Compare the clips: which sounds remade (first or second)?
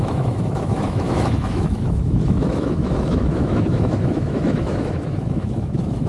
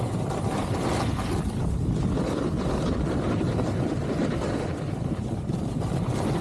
first